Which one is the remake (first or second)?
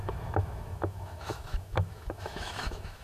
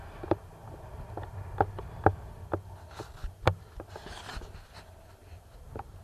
first